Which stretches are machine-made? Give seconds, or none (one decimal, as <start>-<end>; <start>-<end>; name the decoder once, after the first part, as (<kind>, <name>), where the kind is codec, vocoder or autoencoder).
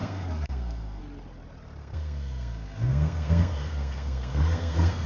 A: 0.0-1.0 (codec, SNAC); 1.8-5.1